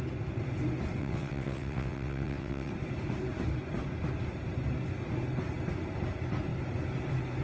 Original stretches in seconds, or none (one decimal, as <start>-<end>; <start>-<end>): 0.0-1.0; 2.7-7.4